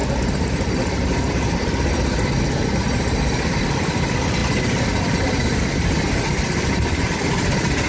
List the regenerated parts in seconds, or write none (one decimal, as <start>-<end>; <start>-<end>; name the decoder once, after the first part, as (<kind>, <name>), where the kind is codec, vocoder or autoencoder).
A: 2.6-7.9 (vocoder, BigVGAN v2)